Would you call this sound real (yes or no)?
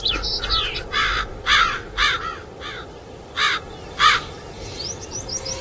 yes